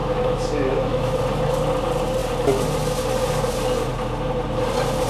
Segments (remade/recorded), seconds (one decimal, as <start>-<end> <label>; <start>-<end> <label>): 0.0-1.2 remade; 1.2-5.1 recorded